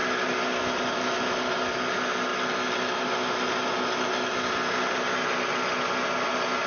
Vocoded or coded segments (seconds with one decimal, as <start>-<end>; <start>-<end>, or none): none